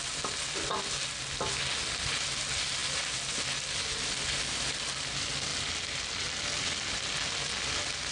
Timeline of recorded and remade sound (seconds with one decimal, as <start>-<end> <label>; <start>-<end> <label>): 0.0-8.1 recorded